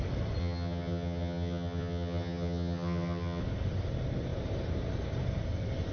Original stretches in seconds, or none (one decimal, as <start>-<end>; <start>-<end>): 0.0-0.4; 3.4-5.9